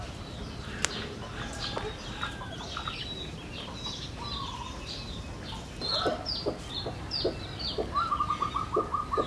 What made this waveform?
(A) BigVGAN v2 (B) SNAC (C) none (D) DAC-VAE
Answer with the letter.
C